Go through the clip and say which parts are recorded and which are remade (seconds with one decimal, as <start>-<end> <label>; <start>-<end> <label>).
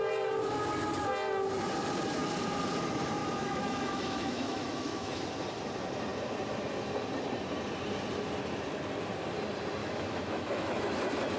0.0-3.2 recorded; 3.2-5.2 remade; 5.2-9.8 recorded; 9.8-10.8 remade; 10.8-11.4 recorded